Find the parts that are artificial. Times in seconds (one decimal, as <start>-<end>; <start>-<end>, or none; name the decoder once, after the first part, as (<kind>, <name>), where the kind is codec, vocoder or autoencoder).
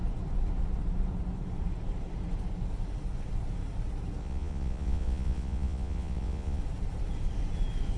4.2-6.6 (vocoder, Vocos)